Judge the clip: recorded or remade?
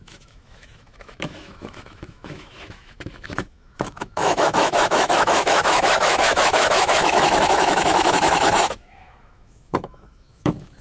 remade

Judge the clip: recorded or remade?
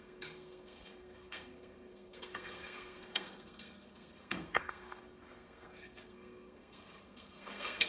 remade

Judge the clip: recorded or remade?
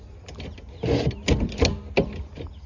recorded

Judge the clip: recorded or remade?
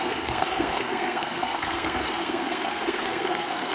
remade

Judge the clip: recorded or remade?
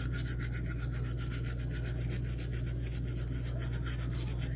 recorded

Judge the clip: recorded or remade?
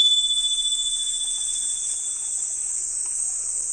remade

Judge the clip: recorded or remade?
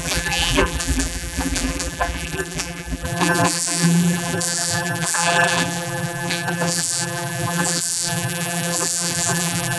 remade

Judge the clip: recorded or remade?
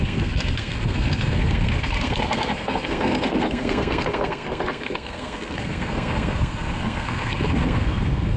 remade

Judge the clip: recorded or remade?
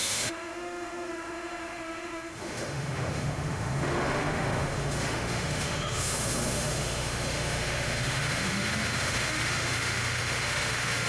remade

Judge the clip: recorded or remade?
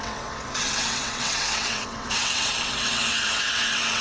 remade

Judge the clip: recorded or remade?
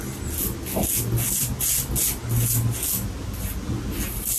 recorded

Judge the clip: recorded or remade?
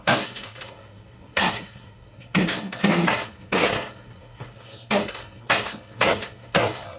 remade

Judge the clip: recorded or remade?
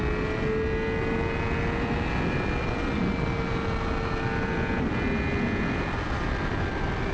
recorded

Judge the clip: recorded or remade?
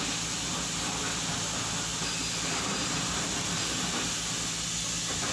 recorded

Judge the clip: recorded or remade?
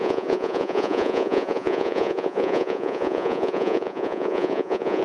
remade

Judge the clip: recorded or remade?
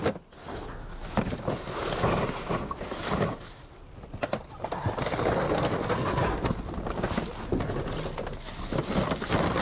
recorded